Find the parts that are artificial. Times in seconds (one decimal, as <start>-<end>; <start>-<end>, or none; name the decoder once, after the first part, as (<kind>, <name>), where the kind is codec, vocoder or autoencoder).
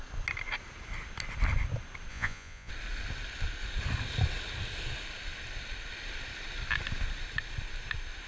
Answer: 2.1-2.7 (vocoder, Vocos)